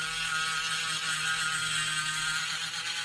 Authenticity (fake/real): real